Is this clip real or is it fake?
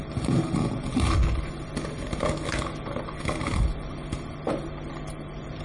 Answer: real